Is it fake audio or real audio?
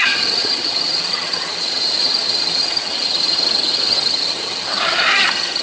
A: fake